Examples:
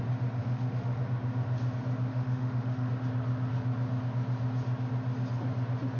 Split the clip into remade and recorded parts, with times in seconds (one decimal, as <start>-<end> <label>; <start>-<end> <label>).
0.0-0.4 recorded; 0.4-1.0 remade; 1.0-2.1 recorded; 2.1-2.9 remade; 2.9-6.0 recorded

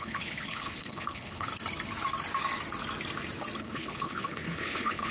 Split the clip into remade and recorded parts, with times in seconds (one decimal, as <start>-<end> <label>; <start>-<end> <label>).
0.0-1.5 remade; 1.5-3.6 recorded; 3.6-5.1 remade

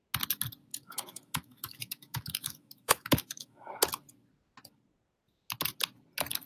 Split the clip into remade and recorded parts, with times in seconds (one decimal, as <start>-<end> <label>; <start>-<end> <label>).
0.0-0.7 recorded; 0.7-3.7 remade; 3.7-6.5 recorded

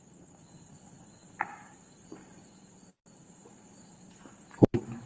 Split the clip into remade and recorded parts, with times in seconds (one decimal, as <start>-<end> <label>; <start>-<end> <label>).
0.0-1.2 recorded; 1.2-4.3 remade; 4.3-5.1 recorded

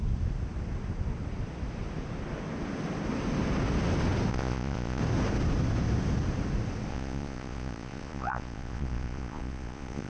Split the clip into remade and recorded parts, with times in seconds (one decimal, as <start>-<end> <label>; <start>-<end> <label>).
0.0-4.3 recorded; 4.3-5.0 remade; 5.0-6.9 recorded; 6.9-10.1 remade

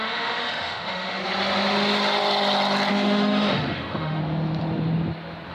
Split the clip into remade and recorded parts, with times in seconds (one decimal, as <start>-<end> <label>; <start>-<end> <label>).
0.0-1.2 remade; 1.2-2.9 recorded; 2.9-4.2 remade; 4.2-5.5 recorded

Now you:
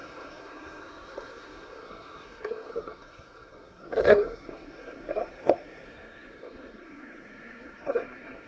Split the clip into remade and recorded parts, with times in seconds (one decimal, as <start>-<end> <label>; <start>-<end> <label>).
0.0-8.5 remade